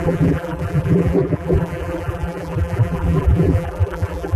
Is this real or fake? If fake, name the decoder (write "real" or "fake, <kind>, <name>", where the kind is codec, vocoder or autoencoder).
fake, vocoder, BigVGAN v2